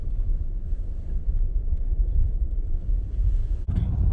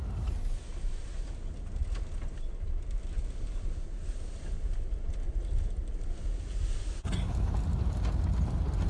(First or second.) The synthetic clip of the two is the first